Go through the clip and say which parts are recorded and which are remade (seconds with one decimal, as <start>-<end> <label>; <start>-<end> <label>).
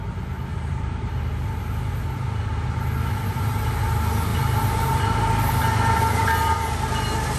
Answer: 0.0-0.5 recorded; 0.5-1.2 remade; 1.2-4.3 recorded; 4.3-5.0 remade; 5.0-7.4 recorded